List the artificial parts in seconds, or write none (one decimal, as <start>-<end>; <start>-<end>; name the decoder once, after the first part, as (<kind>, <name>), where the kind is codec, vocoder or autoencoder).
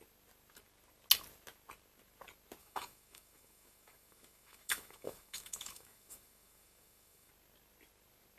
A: 2.6-7.3 (autoencoder, DAC-VAE)